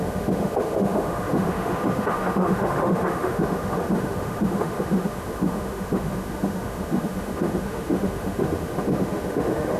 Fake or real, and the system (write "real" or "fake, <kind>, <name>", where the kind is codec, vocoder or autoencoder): fake, autoencoder, DAC-VAE